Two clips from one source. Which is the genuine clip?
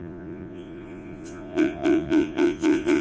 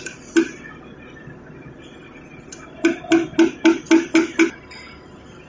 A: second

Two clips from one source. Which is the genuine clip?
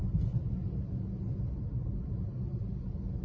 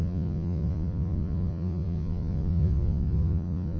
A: first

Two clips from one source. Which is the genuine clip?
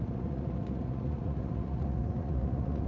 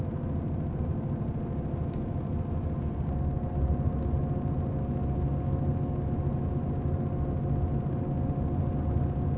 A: second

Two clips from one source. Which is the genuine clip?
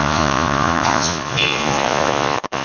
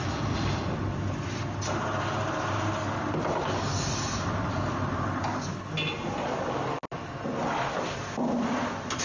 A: second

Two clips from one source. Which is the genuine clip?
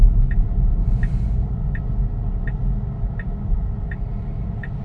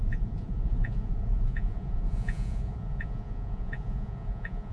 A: first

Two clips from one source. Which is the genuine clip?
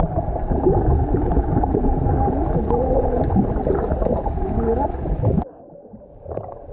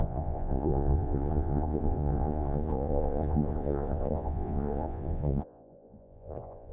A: first